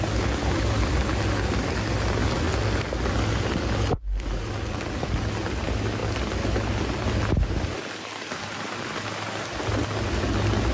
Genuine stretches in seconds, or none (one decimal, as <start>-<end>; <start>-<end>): 0.0-10.7